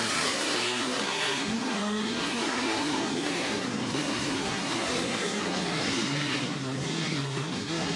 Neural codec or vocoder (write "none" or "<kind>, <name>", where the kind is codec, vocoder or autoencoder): codec, SNAC